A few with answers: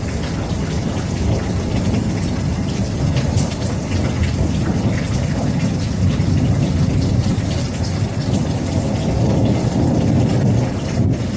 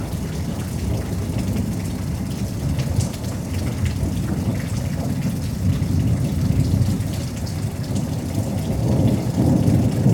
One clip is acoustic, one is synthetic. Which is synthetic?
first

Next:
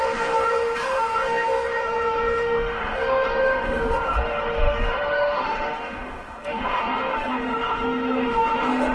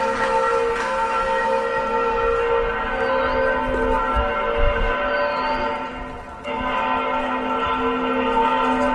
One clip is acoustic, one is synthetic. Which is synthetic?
first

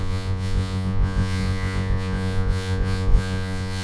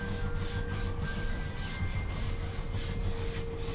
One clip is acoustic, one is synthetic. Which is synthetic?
first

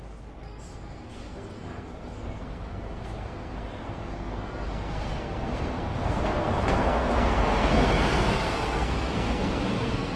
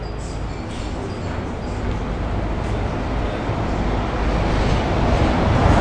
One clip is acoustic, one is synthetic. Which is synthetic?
first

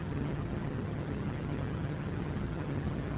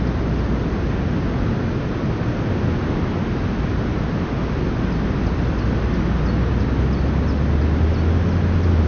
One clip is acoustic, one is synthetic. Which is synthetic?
first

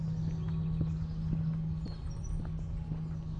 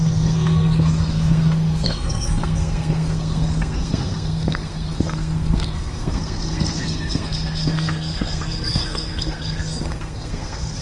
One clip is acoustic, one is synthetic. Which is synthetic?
second